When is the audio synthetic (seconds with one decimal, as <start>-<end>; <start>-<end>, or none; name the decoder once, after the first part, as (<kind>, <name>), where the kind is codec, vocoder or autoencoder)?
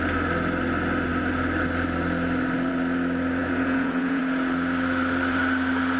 3.4-4.2 (vocoder, Vocos)